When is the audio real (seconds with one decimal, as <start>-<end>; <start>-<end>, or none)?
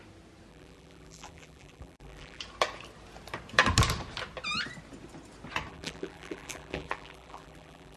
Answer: 0.0-0.5; 2.4-5.7